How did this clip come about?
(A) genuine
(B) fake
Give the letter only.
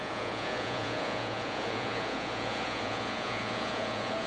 B